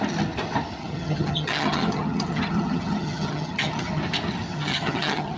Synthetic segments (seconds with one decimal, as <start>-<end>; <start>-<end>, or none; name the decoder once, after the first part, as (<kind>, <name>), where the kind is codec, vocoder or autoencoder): 0.8-4.0 (vocoder, HiFi-GAN); 4.5-5.4